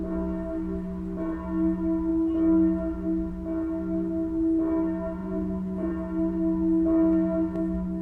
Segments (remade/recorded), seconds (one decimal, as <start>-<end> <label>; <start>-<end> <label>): 0.0-5.2 recorded; 5.2-5.9 remade; 5.9-8.0 recorded